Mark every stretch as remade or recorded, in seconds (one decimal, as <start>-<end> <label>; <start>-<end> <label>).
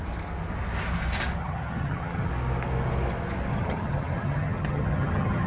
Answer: 0.0-1.4 recorded; 1.4-2.3 remade; 2.3-3.5 recorded; 3.5-5.5 remade